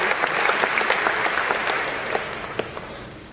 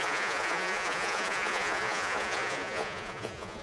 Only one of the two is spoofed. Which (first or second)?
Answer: second